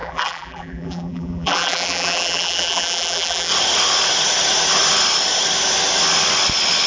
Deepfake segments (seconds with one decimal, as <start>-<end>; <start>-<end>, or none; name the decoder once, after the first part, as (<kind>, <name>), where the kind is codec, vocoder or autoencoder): 0.0-3.5 (vocoder, BigVGAN v2)